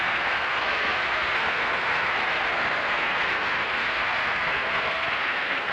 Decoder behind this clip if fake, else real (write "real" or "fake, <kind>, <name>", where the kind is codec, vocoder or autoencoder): fake, codec, SNAC